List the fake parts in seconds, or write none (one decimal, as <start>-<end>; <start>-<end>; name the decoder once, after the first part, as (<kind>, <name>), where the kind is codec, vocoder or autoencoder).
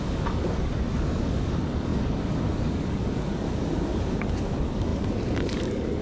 0.0-6.0 (codec, DAC)